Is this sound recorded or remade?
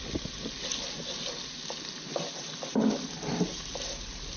recorded